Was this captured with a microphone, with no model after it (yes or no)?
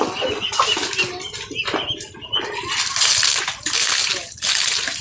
yes